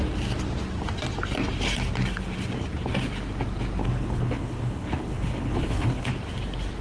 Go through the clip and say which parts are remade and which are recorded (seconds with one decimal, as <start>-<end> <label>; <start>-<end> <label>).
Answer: 0.0-3.8 recorded; 3.8-6.1 remade; 6.1-6.8 recorded